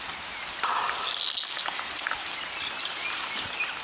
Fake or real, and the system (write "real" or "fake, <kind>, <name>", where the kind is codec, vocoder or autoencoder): real